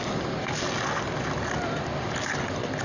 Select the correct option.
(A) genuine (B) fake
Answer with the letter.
A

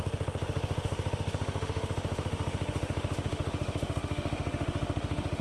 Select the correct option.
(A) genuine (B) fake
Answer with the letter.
B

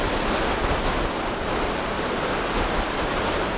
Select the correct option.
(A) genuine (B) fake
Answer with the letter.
A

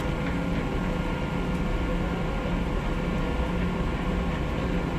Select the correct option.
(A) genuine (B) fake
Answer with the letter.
A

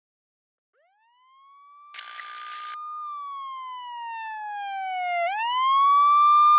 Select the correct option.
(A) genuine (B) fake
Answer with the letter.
A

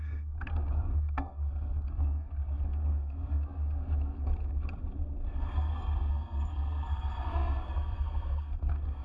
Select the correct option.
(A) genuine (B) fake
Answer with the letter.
B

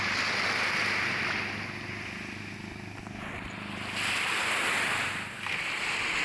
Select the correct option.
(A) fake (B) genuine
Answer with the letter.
B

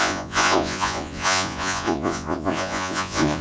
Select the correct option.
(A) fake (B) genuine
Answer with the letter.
A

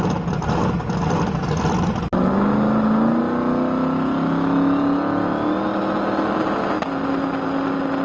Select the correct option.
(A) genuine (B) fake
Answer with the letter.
A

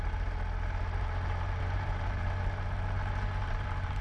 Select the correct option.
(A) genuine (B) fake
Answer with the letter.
B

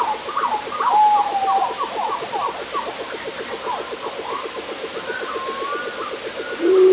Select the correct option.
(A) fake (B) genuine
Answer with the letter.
B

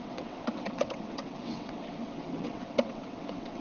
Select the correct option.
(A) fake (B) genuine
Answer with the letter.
A